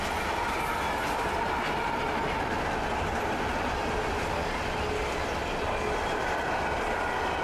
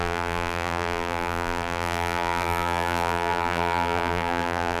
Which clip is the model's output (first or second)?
second